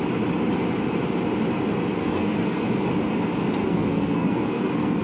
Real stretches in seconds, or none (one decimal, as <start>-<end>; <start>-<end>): 0.0-2.0; 2.6-3.6